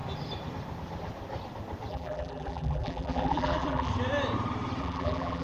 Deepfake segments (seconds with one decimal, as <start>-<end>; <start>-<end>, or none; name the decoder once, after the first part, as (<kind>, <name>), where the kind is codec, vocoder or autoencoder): 1.9-3.9 (vocoder, BigVGAN v2); 4.8-5.4